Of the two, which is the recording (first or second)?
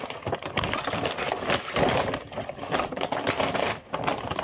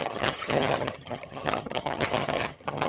first